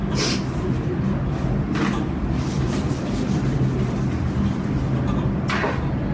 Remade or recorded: recorded